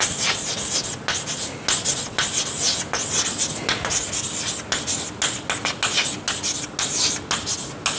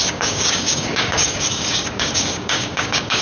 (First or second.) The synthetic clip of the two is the second